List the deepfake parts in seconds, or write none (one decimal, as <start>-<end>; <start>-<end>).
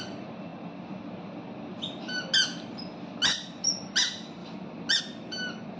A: none